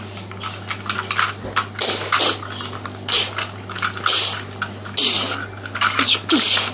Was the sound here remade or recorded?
recorded